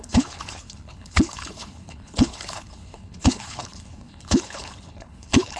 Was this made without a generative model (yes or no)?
no